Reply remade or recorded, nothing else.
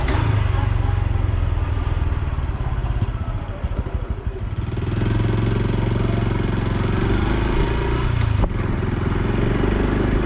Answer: recorded